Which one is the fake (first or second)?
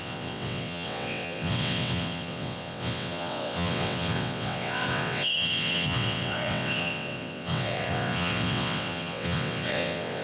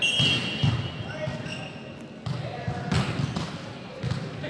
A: first